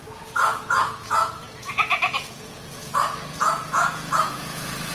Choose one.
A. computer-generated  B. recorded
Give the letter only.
A